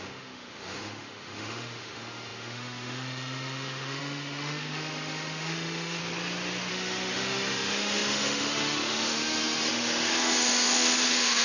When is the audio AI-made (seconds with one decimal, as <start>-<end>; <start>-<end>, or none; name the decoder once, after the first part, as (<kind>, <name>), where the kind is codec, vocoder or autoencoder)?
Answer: 0.0-6.0 (autoencoder, DAC-VAE); 6.7-11.4